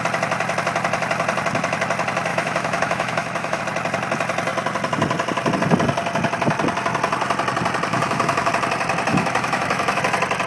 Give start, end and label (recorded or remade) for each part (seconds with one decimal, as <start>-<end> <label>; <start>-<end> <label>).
0.0-2.3 recorded; 2.3-3.6 remade; 3.6-7.9 recorded; 7.9-8.5 remade; 8.5-9.1 recorded; 9.1-10.0 remade; 10.0-10.5 recorded

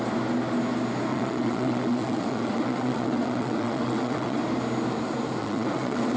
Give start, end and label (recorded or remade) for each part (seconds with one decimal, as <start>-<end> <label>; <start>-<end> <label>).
0.0-1.1 recorded; 1.1-4.4 remade; 4.4-5.4 recorded; 5.4-6.2 remade

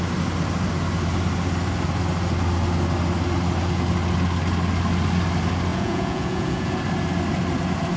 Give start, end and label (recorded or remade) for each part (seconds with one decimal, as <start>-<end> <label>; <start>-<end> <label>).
0.0-5.7 recorded; 5.7-6.8 remade; 6.8-8.0 recorded

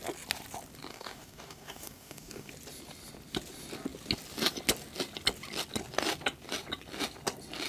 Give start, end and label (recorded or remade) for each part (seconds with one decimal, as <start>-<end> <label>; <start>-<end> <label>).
0.0-0.9 recorded; 0.9-2.5 remade; 2.5-7.7 recorded

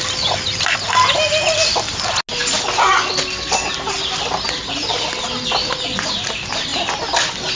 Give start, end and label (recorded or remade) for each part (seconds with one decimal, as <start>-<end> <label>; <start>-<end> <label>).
0.0-7.5 recorded

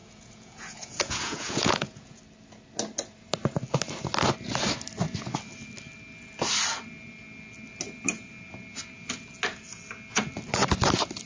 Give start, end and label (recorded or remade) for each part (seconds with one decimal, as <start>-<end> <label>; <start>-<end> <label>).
0.0-2.2 remade; 2.2-11.3 recorded

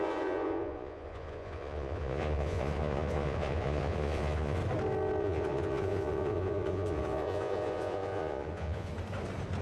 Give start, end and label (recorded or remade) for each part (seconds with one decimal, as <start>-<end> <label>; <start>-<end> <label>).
0.0-4.6 remade; 4.6-5.2 recorded; 5.2-8.9 remade; 8.9-9.6 recorded